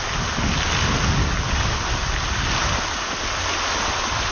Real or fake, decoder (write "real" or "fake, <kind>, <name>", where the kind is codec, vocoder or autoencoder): real